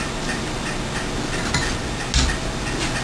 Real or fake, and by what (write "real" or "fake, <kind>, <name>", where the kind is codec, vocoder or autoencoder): real